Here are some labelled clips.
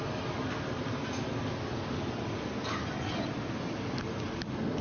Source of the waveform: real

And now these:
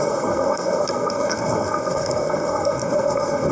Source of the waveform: fake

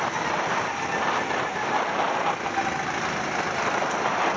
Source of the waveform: real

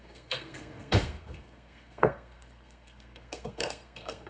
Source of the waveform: fake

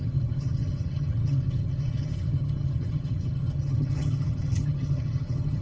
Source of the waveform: fake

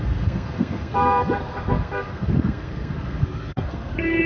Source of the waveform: fake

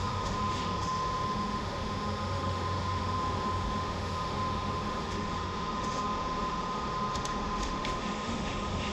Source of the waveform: fake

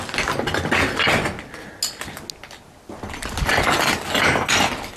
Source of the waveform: real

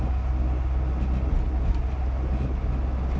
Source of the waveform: real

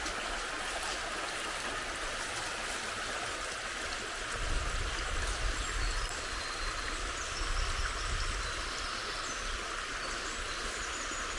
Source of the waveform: real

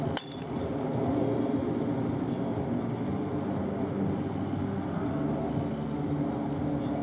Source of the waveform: real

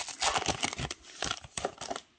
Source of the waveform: real